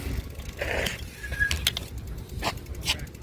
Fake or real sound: real